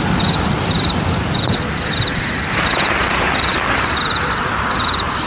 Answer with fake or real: real